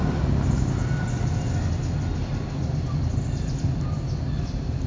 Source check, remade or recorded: recorded